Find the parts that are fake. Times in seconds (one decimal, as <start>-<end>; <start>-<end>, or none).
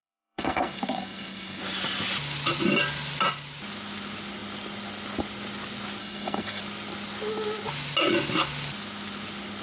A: 0.0-1.6; 6.0-6.6